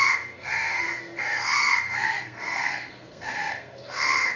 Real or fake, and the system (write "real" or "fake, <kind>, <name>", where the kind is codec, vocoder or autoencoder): fake, codec, SNAC